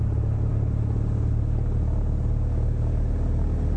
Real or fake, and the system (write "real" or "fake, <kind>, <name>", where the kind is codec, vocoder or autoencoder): real